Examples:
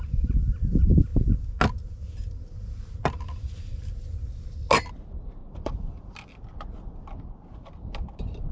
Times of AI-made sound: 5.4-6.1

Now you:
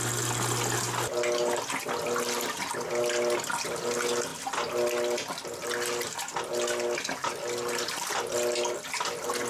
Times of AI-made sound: none

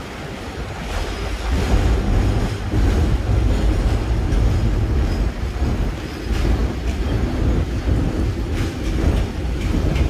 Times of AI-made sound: none

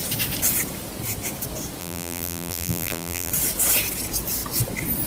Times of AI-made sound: 1.8-3.3

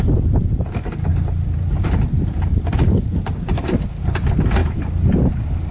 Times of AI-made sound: 0.0-5.7

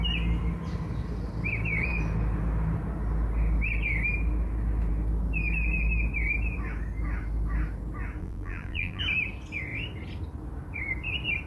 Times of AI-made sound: 8.2-9.0

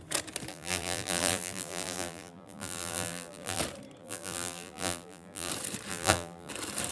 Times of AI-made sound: 0.5-3.6; 4.0-5.5; 5.9-6.5